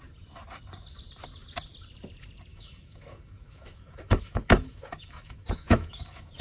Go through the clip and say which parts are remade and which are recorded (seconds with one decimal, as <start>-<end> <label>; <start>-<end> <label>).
0.0-2.5 recorded; 2.5-6.4 remade